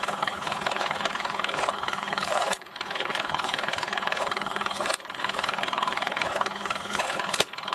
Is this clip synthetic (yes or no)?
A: yes